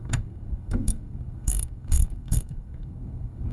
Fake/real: fake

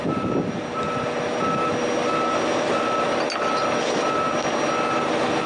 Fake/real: real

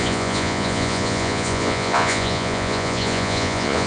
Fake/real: fake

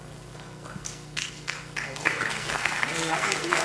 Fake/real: fake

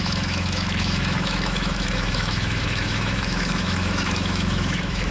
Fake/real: fake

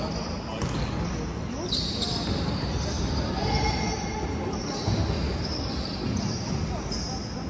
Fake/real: real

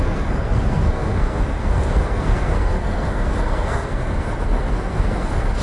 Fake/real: fake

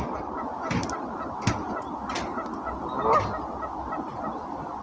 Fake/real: real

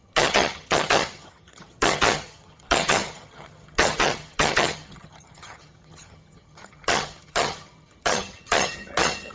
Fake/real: fake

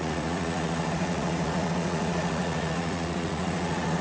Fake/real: fake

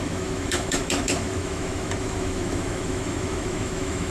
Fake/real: fake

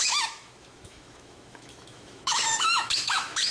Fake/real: fake